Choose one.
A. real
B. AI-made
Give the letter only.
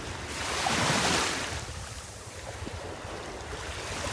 A